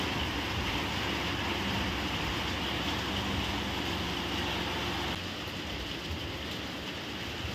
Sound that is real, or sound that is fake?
real